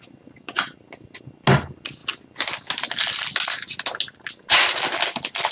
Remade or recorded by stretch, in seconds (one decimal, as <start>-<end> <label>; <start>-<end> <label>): 0.0-5.5 recorded